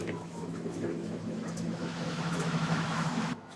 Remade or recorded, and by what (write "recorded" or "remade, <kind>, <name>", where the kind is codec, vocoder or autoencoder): remade, autoencoder, DAC-VAE